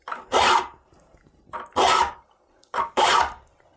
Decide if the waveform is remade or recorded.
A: recorded